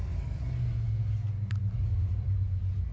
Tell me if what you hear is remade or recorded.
recorded